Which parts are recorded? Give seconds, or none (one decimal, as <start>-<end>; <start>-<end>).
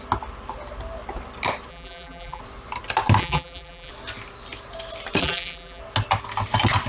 0.0-1.7; 2.4-3.2; 3.9-5.2; 5.8-6.9